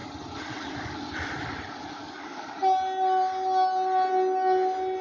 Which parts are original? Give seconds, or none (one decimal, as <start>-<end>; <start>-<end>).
0.0-2.0; 2.6-5.0